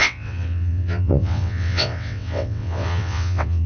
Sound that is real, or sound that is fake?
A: fake